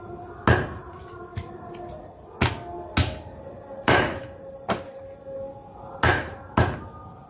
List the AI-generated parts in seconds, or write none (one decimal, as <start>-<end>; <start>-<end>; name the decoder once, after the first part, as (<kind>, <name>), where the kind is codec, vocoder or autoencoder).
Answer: 1.3-2.0 (vocoder, BigVGAN v2)